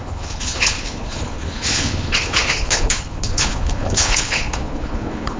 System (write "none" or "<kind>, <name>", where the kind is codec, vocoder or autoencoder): codec, HILCodec